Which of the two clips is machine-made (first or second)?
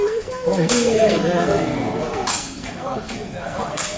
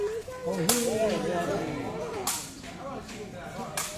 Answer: first